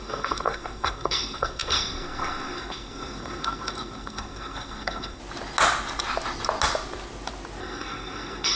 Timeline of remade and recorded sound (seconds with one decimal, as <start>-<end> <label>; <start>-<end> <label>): 0.0-5.2 remade; 5.2-7.6 recorded; 7.6-8.6 remade